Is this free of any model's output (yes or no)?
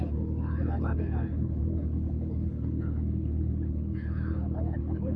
no